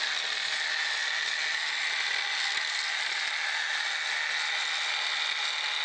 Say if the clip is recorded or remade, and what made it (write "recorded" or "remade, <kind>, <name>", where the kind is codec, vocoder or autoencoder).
recorded